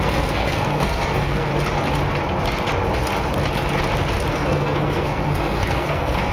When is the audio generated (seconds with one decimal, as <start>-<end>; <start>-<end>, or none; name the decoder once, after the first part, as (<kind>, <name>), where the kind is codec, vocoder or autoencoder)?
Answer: 0.0-1.5 (codec, SNAC); 4.3-6.3